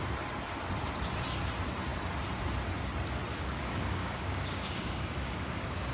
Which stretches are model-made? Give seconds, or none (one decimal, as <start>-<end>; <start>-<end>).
3.3-5.9